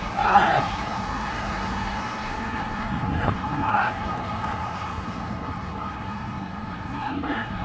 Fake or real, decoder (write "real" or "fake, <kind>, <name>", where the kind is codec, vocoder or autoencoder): fake, codec, SNAC